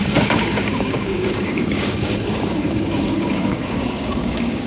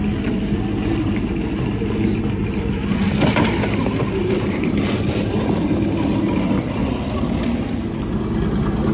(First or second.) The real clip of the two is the second